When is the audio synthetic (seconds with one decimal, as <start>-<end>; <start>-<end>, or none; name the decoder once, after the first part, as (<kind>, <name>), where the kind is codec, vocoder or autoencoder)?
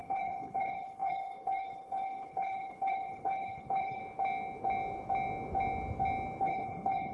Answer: 0.0-4.0 (codec, HILCodec); 6.4-7.1